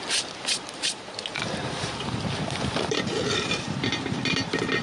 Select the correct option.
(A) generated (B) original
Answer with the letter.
B